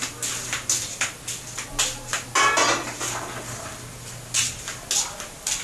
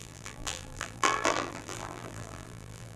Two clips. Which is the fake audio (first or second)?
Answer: second